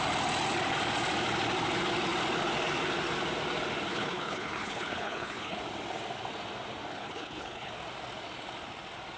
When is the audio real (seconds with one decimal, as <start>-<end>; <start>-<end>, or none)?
0.0-3.9; 5.6-6.9; 7.7-9.2